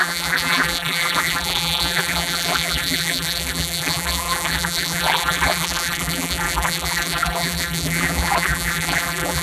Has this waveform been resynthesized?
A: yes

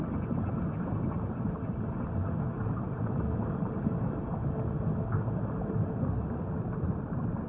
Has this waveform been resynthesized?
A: no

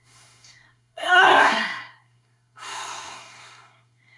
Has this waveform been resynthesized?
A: yes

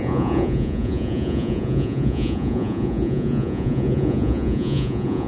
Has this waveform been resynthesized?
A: yes